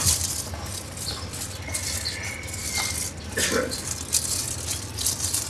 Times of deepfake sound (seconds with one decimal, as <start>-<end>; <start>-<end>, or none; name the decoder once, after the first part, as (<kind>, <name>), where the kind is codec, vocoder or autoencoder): none